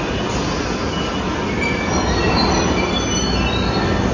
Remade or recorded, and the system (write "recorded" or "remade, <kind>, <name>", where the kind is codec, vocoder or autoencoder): recorded